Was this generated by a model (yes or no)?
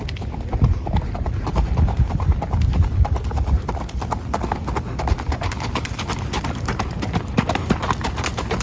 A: no